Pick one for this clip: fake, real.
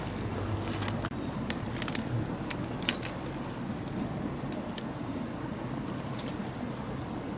real